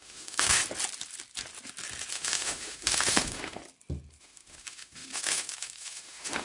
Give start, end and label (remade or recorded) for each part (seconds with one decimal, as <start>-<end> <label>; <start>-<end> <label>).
0.0-0.6 remade; 0.6-2.1 recorded; 2.1-3.6 remade; 3.6-4.2 recorded; 4.2-6.4 remade